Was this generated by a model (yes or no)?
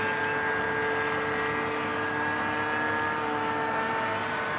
no